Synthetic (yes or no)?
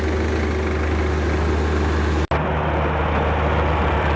no